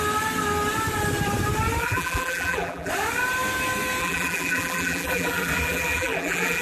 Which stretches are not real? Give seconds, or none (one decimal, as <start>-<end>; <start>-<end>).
1.8-2.9; 4.0-6.6